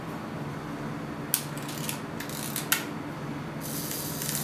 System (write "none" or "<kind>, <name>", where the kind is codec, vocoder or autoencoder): none